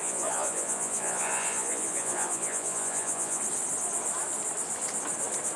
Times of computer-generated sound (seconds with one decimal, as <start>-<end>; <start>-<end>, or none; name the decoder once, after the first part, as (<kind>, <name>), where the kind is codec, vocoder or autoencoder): 0.0-3.4 (vocoder, Vocos)